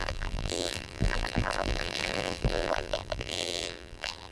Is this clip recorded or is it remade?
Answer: remade